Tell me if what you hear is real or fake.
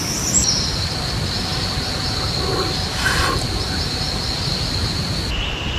real